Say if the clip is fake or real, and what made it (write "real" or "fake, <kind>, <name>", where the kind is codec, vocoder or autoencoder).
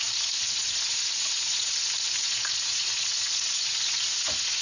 fake, vocoder, Vocos